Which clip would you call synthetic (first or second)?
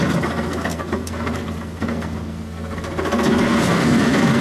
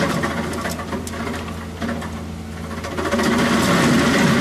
first